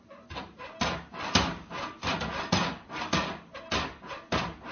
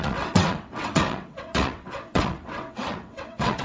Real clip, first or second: first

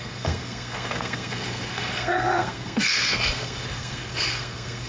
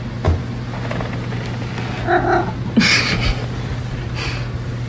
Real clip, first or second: second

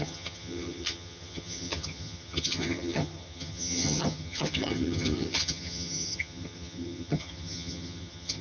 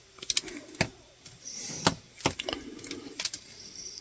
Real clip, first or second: second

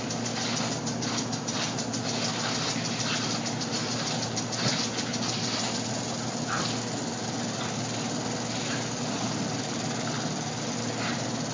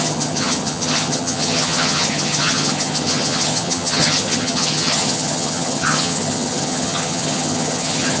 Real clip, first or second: first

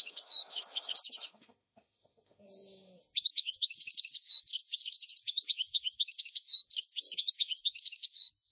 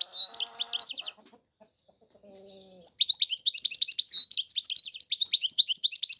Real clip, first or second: second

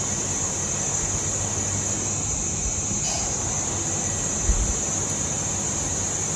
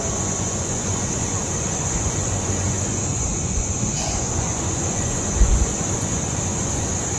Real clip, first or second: first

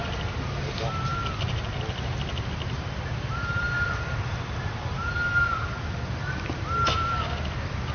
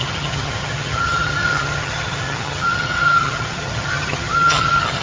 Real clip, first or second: first